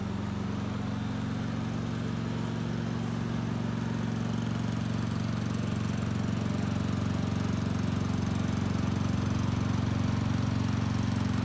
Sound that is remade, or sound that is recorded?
recorded